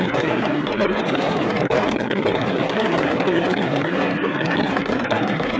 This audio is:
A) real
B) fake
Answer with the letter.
B